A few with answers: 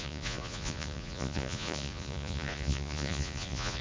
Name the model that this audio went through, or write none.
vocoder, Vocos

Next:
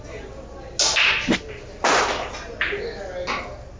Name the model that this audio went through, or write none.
none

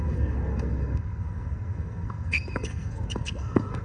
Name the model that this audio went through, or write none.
codec, SNAC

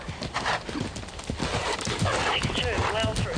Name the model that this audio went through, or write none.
none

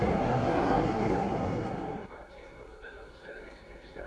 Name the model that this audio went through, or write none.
codec, SNAC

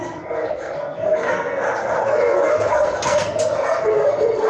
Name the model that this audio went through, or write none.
codec, SNAC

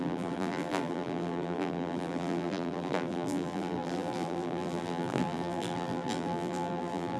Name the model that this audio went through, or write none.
vocoder, BigVGAN v2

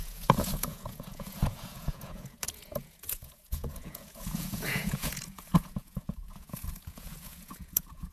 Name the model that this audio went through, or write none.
vocoder, Vocos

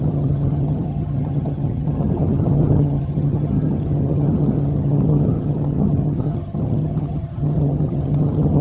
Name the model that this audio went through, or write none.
vocoder, HiFi-GAN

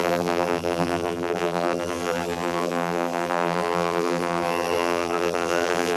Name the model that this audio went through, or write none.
vocoder, BigVGAN v2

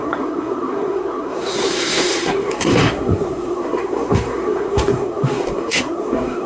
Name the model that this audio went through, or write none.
codec, SNAC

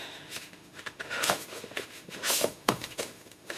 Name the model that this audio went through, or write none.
autoencoder, DAC-VAE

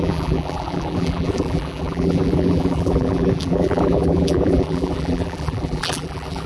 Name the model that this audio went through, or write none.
vocoder, BigVGAN v2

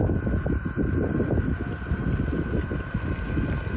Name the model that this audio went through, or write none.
none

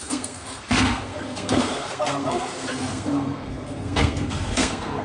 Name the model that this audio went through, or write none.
codec, SNAC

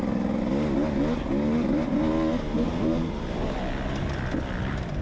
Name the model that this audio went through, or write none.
none